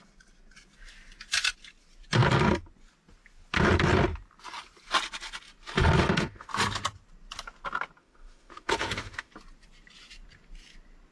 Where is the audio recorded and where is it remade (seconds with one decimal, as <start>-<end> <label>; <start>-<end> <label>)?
0.0-6.0 recorded; 6.0-6.5 remade; 6.5-8.0 recorded; 8.0-9.3 remade; 9.3-11.1 recorded